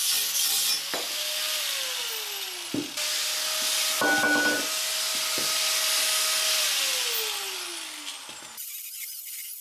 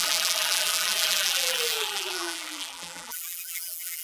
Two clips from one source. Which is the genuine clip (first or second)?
first